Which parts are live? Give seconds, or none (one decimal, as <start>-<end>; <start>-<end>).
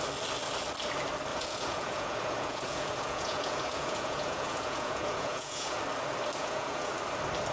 0.0-1.3; 5.8-6.4; 6.9-7.5